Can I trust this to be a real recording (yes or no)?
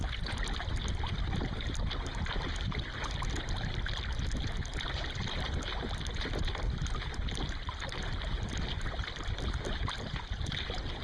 yes